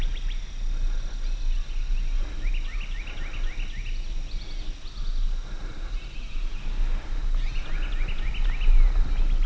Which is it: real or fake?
real